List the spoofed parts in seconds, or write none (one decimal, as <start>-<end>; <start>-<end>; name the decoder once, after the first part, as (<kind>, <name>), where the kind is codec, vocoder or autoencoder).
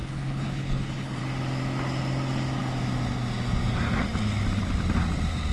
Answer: 0.0-1.2 (codec, HILCodec)